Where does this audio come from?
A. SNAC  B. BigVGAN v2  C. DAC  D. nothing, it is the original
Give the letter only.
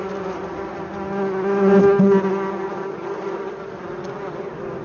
D